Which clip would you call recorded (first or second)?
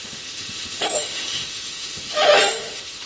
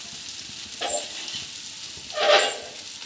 second